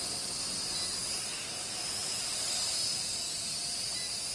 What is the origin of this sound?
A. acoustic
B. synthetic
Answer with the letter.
A